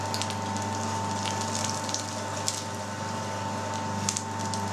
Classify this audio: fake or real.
real